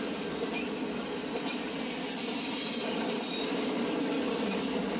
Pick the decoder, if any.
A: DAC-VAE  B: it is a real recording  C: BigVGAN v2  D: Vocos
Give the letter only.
B